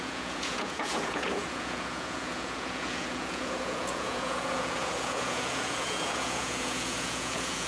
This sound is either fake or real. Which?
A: fake